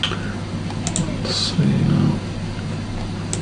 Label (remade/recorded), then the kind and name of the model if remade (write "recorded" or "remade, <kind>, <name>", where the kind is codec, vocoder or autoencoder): recorded